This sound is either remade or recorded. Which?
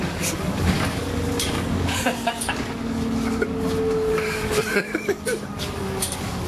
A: remade